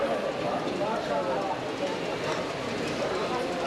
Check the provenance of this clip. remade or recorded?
recorded